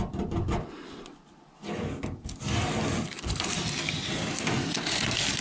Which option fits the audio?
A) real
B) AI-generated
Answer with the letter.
A